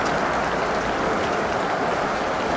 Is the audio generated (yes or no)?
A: no